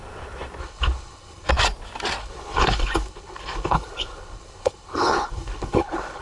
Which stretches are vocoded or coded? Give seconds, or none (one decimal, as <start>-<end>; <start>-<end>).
0.6-1.5; 2.2-6.2